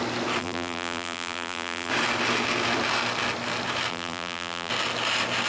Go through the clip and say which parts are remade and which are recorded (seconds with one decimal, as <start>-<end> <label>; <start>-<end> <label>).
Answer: 0.0-0.4 recorded; 0.4-1.9 remade; 1.9-3.9 recorded; 3.9-4.7 remade; 4.7-5.5 recorded